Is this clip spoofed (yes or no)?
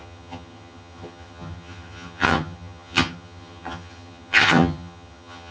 yes